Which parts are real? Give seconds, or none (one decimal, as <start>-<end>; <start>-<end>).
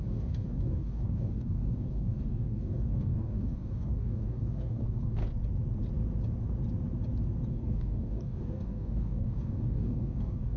5.2-7.5